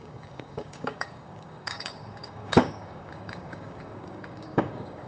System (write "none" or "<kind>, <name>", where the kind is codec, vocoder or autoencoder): codec, DAC